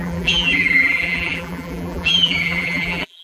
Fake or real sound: fake